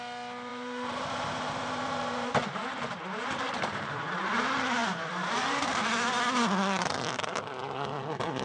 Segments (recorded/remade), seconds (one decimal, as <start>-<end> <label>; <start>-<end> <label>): 0.0-0.5 recorded; 0.5-4.1 remade; 4.1-4.8 recorded; 4.8-6.2 remade; 6.2-8.4 recorded